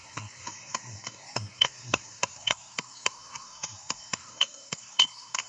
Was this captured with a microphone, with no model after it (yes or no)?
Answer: no